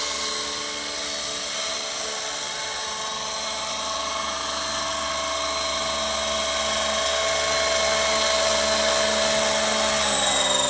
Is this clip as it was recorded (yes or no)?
yes